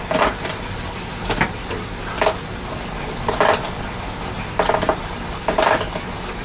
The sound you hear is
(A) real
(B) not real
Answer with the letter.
A